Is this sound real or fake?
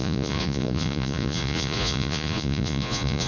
fake